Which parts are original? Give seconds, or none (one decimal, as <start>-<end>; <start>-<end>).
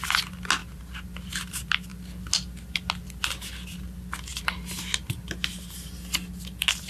0.0-6.9